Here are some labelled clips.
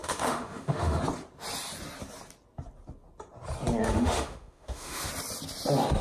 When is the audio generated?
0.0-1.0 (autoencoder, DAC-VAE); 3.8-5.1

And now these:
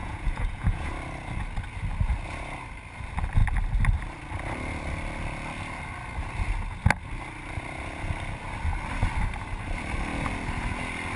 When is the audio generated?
0.0-0.9 (vocoder, Vocos)

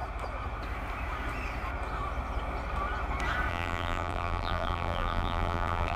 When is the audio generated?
3.5-6.0 (vocoder, BigVGAN v2)

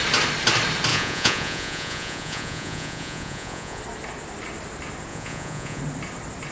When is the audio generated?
0.9-3.8 (vocoder, Vocos); 5.1-5.8

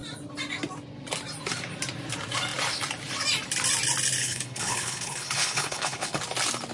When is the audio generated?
4.2-6.2 (codec, HILCodec)

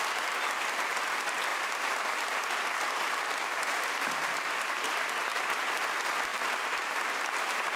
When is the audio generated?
1.5-5.1 (vocoder, BigVGAN v2); 6.3-7.8

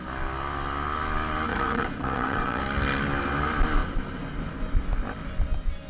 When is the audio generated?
1.5-2.6 (vocoder, WaveNeXt)

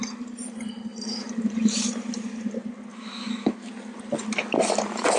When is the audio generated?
2.9-3.7 (autoencoder, DAC-VAE)